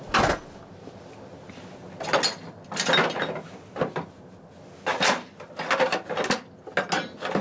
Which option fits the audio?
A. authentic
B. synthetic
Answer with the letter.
A